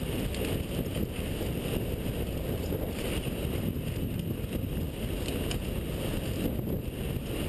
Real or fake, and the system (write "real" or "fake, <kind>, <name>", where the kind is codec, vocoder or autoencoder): real